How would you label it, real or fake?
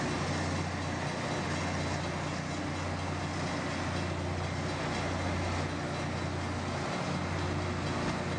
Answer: real